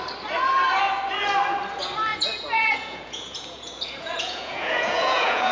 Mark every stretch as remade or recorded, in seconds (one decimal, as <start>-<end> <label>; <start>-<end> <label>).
0.0-2.1 recorded; 2.1-5.5 remade